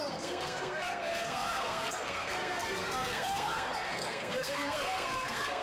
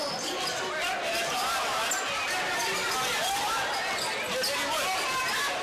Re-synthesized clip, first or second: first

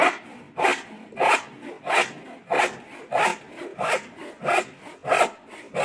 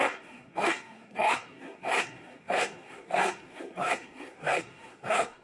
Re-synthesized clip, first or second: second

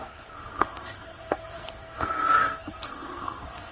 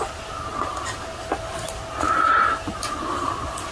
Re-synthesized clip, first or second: first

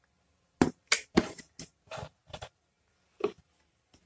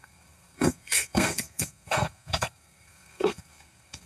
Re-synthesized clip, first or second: second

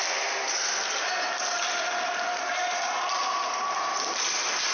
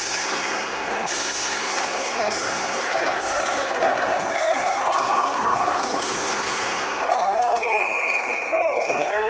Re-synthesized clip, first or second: second